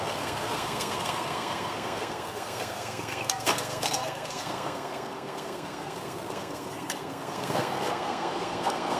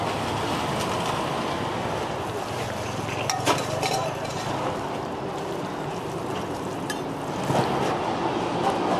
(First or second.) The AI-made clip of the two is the first